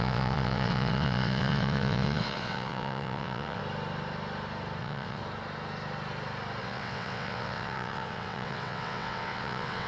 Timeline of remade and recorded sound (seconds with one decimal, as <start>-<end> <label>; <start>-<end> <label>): 0.0-3.6 remade; 3.6-4.8 recorded; 4.8-5.2 remade; 5.2-6.6 recorded; 6.6-9.9 remade